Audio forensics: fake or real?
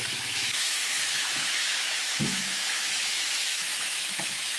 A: fake